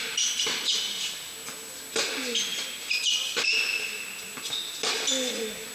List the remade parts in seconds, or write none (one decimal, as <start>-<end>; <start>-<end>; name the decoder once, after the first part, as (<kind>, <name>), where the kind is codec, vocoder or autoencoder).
none